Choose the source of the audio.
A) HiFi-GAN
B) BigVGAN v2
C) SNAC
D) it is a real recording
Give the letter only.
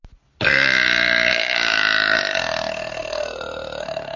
D